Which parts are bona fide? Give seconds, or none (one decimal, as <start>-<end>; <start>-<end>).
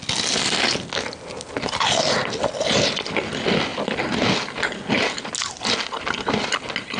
0.0-7.0